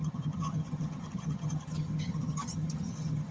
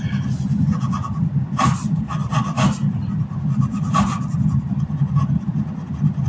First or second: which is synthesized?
first